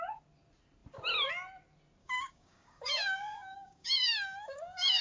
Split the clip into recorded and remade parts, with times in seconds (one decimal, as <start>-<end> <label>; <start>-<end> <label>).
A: 0.0-2.0 recorded; 2.0-5.0 remade

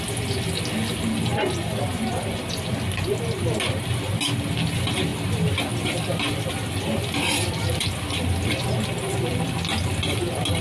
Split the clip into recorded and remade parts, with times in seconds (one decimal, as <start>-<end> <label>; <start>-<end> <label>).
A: 0.0-10.6 recorded